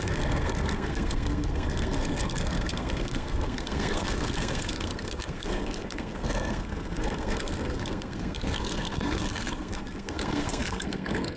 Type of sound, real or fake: fake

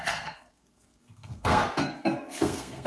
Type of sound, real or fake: fake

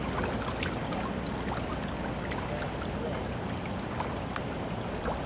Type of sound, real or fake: real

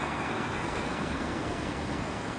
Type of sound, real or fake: fake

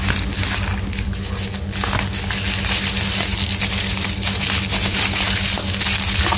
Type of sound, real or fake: real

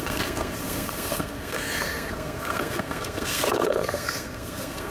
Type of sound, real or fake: fake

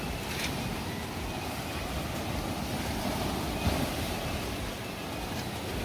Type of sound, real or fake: real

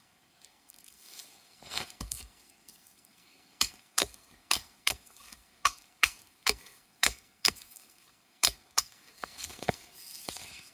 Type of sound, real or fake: fake